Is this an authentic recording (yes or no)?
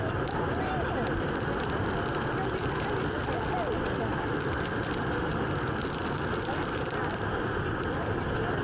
yes